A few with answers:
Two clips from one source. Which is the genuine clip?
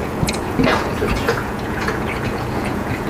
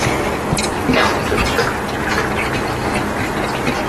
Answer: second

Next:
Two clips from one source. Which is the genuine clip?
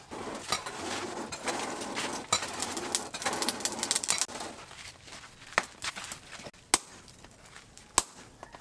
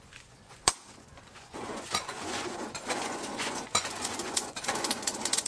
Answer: first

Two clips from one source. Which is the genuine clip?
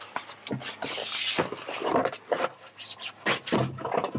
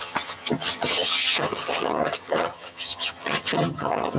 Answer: first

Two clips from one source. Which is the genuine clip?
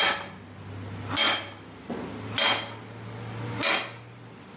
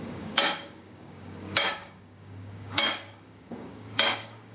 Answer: first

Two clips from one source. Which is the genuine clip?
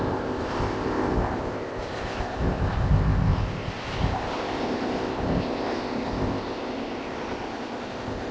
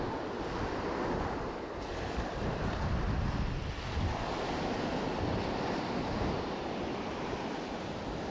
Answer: second